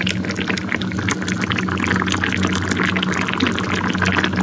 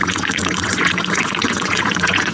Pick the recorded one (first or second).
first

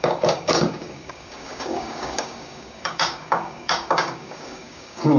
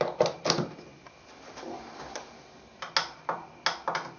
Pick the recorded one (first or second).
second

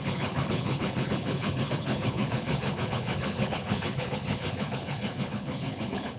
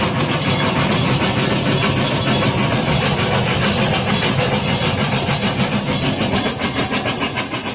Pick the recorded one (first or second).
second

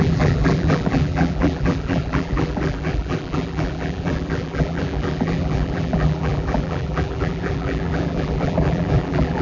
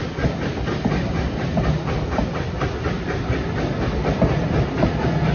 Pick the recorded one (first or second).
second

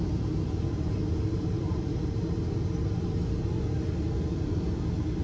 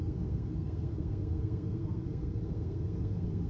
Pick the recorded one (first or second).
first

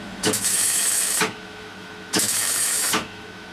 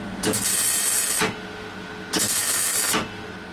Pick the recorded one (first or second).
second